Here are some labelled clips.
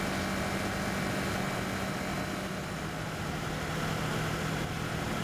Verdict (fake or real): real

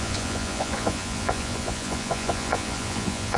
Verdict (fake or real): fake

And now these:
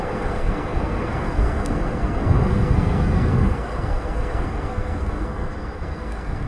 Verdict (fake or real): fake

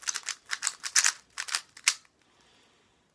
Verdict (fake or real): real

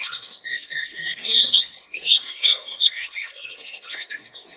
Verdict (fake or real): fake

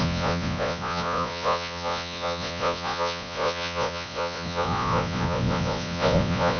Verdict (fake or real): fake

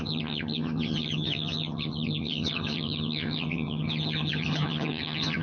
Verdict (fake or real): fake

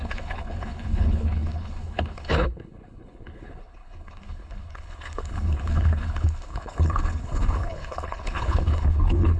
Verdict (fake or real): fake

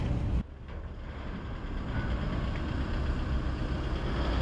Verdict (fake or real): real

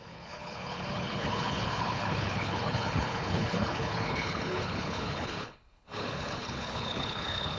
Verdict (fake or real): fake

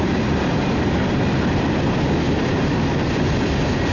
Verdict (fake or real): real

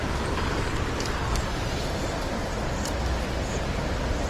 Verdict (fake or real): real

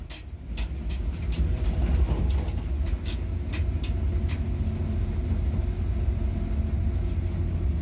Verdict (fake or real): real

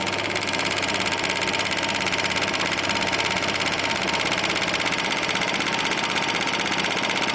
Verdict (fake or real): fake